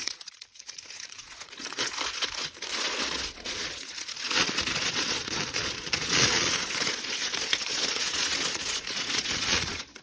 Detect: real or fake fake